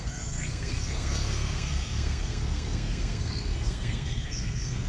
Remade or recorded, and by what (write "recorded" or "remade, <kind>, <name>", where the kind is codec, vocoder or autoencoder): remade, codec, SNAC